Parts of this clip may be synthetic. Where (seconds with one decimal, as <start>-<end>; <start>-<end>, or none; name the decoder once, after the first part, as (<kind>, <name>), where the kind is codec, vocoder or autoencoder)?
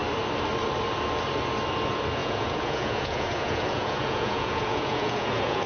2.2-5.7 (vocoder, Vocos)